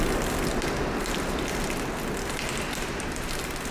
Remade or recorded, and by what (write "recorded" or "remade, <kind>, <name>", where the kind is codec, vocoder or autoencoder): recorded